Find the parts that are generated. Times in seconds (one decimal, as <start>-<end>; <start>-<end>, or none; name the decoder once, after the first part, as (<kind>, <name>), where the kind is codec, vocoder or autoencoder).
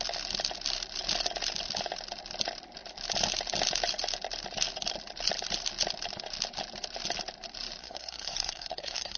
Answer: 7.8-9.2 (codec, SNAC)